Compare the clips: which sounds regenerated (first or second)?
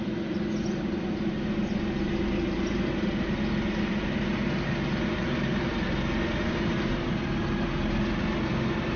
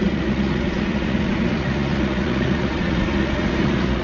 second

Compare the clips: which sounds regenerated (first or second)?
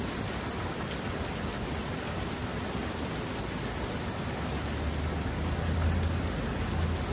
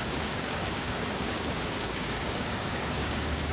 second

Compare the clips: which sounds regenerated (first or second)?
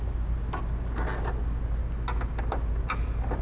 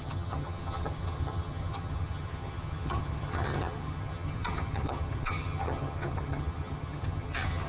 second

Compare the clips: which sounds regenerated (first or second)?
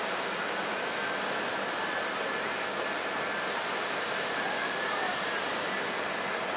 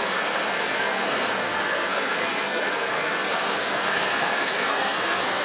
second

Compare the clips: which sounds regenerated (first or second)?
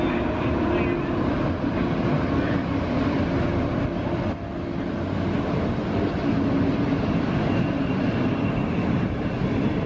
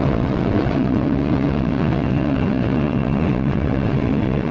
second